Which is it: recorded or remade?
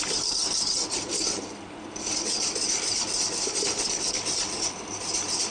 recorded